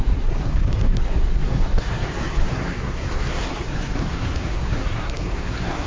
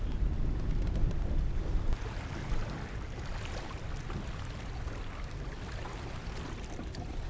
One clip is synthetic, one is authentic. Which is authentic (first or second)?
second